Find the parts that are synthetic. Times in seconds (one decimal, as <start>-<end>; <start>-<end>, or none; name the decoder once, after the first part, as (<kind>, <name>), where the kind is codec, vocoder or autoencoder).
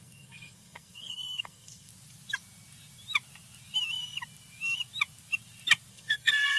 0.0-1.9 (codec, SNAC); 5.9-6.6